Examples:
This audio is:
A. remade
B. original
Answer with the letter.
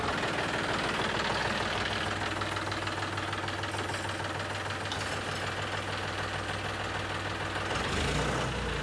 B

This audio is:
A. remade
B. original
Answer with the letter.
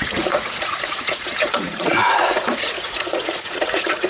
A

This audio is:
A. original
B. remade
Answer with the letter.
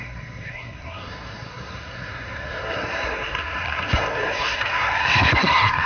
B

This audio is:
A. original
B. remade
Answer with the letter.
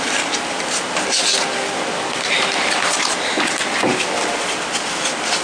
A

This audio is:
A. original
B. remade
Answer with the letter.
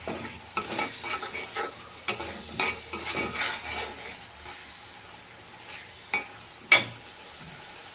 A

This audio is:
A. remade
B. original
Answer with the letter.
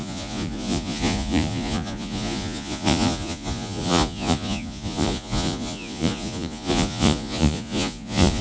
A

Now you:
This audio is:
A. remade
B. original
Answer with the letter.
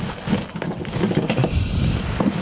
B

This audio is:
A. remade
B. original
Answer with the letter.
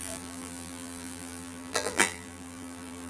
A